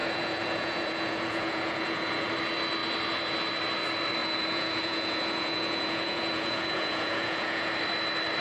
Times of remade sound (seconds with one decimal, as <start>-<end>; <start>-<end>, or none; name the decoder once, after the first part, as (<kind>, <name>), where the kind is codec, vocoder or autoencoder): 0.0-2.3 (vocoder, Vocos); 4.2-7.7